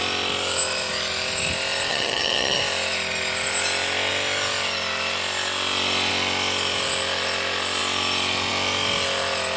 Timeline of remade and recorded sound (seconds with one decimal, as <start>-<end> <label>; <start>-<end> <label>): 0.0-1.9 recorded; 1.9-2.6 remade; 2.6-9.6 recorded

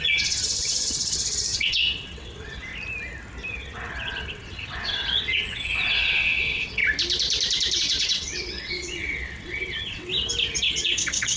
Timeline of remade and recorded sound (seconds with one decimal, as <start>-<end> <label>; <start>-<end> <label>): 0.0-2.7 remade; 2.7-3.5 recorded; 3.5-6.8 remade; 6.8-7.8 recorded; 7.8-10.1 remade; 10.1-10.6 recorded; 10.6-11.4 remade

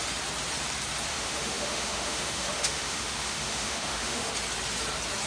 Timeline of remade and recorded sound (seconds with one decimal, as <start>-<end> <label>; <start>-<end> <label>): 0.0-1.1 recorded; 1.1-4.3 remade; 4.3-5.3 recorded